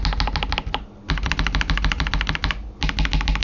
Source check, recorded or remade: recorded